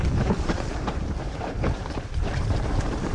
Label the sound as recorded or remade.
remade